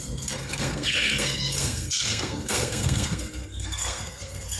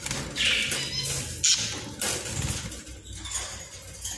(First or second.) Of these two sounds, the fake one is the first